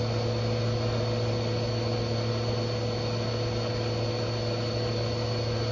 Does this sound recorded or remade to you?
recorded